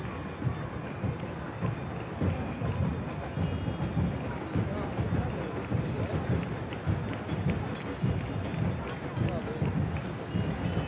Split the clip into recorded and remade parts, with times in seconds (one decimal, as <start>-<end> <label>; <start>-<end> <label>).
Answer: 0.0-10.9 recorded